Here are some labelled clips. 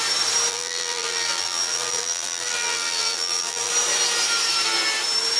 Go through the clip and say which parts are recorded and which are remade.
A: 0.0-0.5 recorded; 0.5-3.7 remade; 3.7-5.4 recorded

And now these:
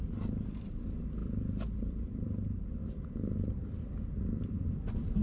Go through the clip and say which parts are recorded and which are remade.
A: 0.0-5.2 remade

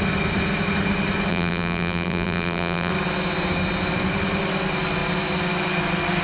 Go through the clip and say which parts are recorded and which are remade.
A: 0.0-1.3 recorded; 1.3-2.9 remade; 2.9-6.2 recorded

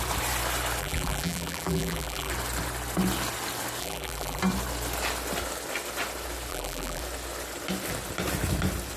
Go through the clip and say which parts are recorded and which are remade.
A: 0.0-0.8 recorded; 0.8-2.3 remade; 2.3-3.8 recorded; 3.8-4.4 remade; 4.4-6.5 recorded; 6.5-7.0 remade; 7.0-9.0 recorded

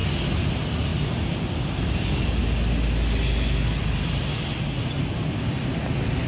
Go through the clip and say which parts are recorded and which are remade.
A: 0.0-0.5 recorded; 0.5-2.4 remade; 2.4-5.0 recorded; 5.0-6.3 remade

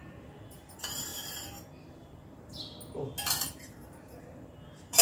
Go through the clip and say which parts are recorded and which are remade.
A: 0.0-1.1 remade; 1.1-1.8 recorded; 1.8-2.5 remade; 2.5-3.5 recorded; 3.5-5.0 remade